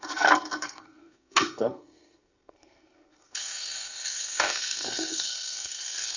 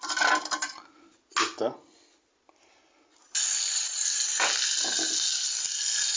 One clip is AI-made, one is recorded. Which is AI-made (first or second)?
first